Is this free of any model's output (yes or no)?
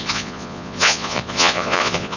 no